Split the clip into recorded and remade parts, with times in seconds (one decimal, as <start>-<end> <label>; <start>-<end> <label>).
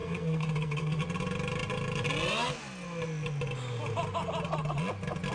0.0-1.0 remade; 1.0-5.3 recorded